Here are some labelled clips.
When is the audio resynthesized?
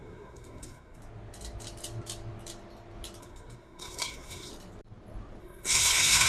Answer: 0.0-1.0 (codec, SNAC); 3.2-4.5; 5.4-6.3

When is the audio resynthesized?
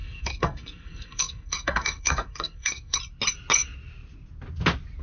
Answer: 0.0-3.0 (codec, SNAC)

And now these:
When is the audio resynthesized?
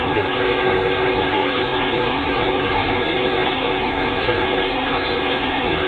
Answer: 0.0-5.9 (codec, SNAC)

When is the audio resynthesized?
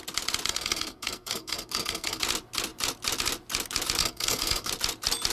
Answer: 0.5-2.2 (codec, SNAC); 4.0-4.7